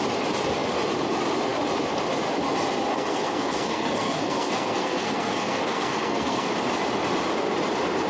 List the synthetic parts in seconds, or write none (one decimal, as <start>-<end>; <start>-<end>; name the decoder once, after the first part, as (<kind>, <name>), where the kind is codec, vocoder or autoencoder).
2.9-6.5 (codec, SNAC)